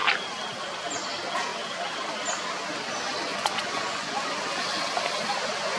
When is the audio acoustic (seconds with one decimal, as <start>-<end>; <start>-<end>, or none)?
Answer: 0.0-3.3; 4.4-5.8